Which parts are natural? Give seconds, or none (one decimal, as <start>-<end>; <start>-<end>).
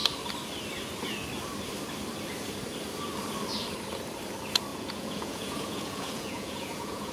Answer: 0.0-4.7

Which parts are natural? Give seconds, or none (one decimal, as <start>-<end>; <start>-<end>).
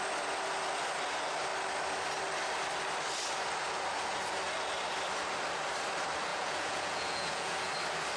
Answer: 0.0-6.3; 7.7-8.2